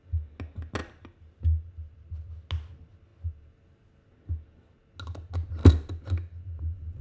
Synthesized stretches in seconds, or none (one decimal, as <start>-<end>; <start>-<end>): none

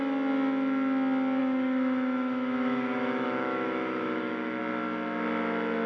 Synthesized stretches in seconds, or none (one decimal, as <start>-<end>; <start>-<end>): 1.4-4.6

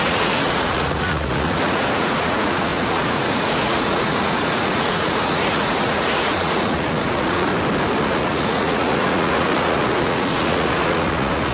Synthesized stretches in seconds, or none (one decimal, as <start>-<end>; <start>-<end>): 0.0-7.5; 8.0-11.5

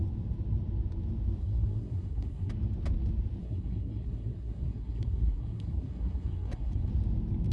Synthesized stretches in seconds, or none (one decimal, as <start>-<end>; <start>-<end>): 1.4-2.5; 3.4-6.9

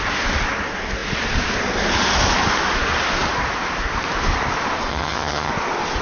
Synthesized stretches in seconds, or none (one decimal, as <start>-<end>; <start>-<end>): 4.9-5.5